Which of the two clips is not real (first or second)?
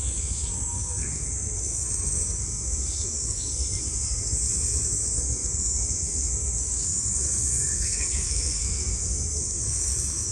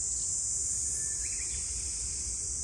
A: first